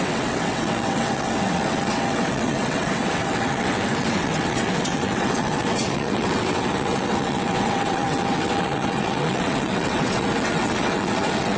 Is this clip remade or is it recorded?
remade